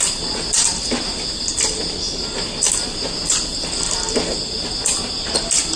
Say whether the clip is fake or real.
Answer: real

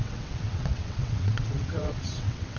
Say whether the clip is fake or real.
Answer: fake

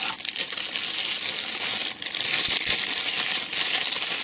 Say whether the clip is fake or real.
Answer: real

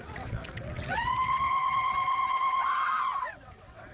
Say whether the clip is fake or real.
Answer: fake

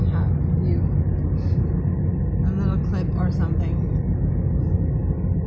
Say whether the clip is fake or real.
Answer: real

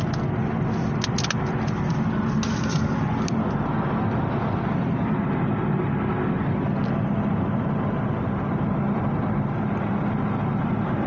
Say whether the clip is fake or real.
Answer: real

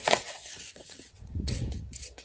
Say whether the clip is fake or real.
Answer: fake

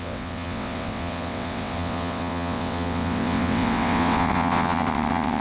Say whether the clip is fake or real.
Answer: fake